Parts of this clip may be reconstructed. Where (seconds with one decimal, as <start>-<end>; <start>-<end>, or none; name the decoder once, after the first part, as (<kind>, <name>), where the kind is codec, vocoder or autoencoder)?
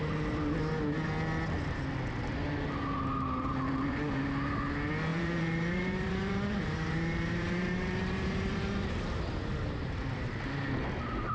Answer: 5.1-10.3 (vocoder, BigVGAN v2)